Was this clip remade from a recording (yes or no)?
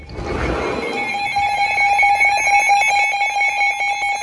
no